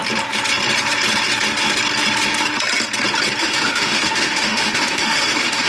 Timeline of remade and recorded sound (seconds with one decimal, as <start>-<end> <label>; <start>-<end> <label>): 0.0-3.4 recorded; 3.4-5.7 remade